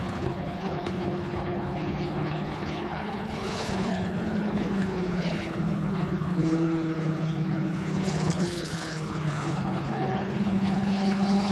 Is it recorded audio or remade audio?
remade